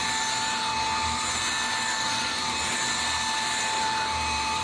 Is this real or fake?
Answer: real